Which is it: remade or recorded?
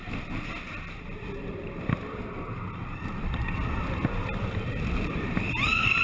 remade